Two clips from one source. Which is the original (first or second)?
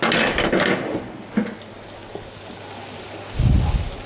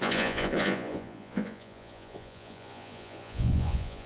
first